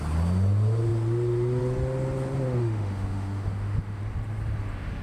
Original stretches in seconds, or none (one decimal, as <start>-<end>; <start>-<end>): 0.0-2.6; 4.0-5.0